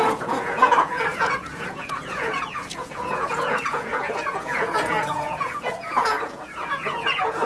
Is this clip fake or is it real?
fake